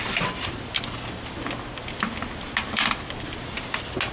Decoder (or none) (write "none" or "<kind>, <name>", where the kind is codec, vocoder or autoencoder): none